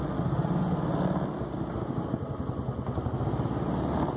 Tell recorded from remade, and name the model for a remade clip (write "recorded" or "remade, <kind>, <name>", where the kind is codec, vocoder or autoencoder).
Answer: recorded